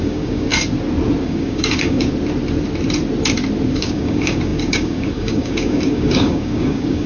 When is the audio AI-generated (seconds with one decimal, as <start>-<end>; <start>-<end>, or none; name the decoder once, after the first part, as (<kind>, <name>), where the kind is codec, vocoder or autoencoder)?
0.0-0.5 (codec, DAC); 1.2-2.1; 3.7-7.1